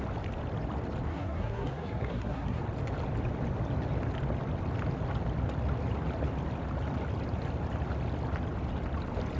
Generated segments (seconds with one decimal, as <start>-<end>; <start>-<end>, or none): 1.1-2.6